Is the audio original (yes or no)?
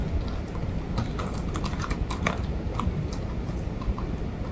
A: yes